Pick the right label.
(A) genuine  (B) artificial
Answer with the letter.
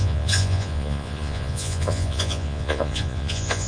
B